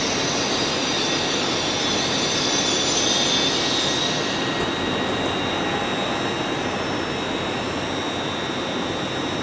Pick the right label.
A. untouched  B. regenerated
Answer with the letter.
A